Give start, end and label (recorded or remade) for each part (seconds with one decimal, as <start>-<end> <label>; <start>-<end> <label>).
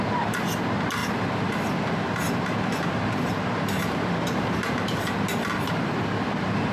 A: 0.0-1.0 recorded; 1.0-5.0 remade; 5.0-6.7 recorded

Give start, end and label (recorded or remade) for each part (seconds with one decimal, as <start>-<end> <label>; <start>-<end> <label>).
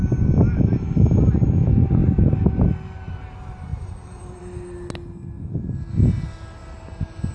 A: 0.0-3.7 recorded; 3.7-4.4 remade; 4.4-7.3 recorded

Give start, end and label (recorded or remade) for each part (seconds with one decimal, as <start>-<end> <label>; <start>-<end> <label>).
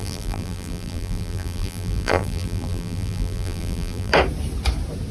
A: 0.0-4.1 remade; 4.1-5.1 recorded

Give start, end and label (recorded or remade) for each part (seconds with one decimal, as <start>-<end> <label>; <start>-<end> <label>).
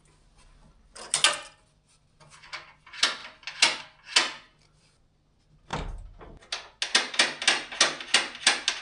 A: 0.0-8.8 recorded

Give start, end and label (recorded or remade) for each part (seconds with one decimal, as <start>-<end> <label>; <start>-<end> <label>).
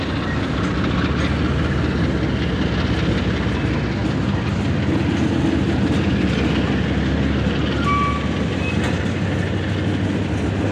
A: 0.0-4.0 recorded; 4.0-5.0 remade; 5.0-10.7 recorded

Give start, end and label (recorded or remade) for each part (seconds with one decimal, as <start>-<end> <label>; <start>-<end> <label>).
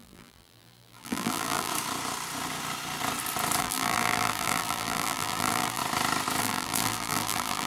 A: 0.0-1.7 remade; 1.7-3.6 recorded; 3.6-5.8 remade; 5.8-6.4 recorded; 6.4-7.7 remade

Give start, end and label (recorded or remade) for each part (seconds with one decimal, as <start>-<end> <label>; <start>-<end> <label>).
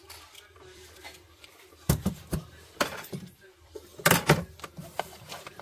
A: 0.0-5.6 remade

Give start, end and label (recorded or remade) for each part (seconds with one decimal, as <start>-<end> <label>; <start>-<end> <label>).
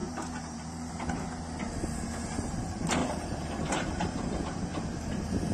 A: 0.0-0.9 remade; 0.9-3.0 recorded; 3.0-4.4 remade; 4.4-5.5 recorded